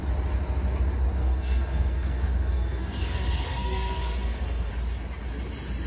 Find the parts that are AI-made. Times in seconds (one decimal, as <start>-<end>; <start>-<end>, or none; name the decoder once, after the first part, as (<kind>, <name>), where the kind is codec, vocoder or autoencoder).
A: 1.2-4.7 (codec, SNAC)